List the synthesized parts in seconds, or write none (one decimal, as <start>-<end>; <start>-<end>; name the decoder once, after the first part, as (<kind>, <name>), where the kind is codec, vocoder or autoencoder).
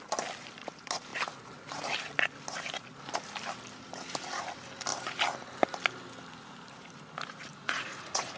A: 7.5-8.4 (vocoder, Vocos)